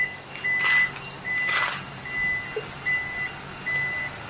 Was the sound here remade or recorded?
recorded